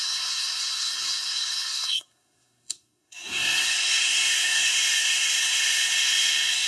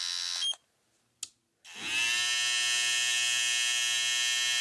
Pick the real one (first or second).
second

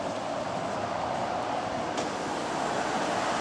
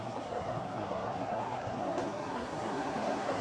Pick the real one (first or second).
first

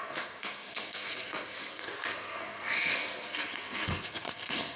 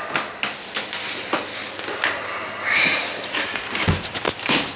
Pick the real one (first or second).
second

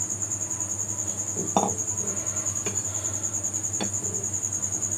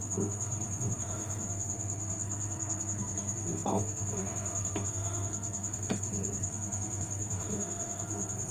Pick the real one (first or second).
first